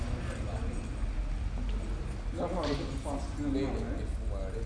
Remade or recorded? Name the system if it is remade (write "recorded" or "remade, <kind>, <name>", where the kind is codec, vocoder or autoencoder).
recorded